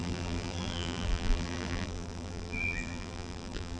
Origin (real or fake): fake